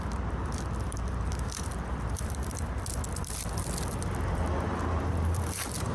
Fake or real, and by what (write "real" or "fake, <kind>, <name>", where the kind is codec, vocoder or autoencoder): fake, vocoder, BigVGAN v2